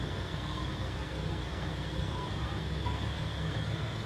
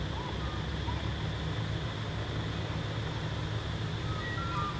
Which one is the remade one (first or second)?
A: first